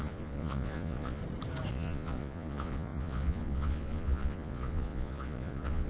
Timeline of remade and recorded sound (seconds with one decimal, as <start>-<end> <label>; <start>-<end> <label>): 0.0-1.2 remade; 1.2-1.7 recorded; 1.7-5.9 remade